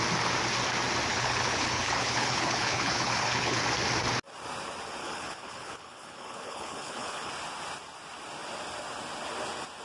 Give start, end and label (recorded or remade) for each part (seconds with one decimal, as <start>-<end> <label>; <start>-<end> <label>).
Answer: 0.0-1.1 recorded; 1.1-3.6 remade; 3.6-5.0 recorded; 5.0-7.3 remade; 7.3-9.8 recorded